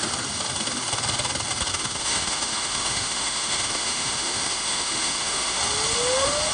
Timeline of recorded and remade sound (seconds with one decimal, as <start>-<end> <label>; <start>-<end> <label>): 0.0-1.7 recorded; 1.7-5.6 remade; 5.6-6.5 recorded